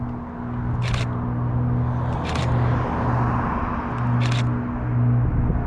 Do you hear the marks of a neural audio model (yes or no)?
no